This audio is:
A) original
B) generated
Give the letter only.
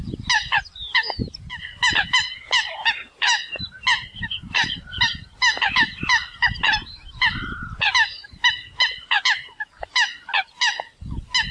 A